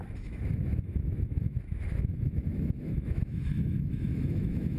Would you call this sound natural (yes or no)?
no